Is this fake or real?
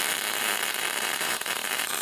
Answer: fake